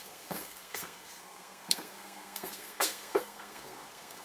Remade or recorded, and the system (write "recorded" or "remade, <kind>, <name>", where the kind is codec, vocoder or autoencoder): remade, codec, SNAC